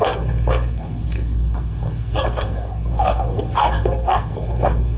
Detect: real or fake fake